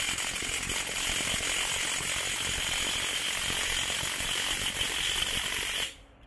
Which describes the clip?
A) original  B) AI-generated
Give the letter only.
A